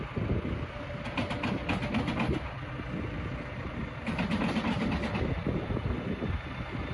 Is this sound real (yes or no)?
yes